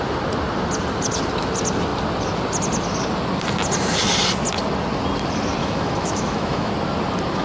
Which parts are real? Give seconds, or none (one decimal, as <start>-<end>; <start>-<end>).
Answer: 0.0-5.6; 6.7-7.4